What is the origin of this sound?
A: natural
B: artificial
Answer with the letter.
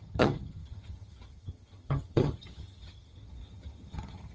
B